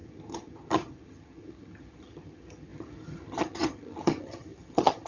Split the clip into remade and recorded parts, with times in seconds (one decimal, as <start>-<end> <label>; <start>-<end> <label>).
0.0-5.1 remade